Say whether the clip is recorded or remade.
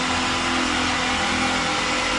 recorded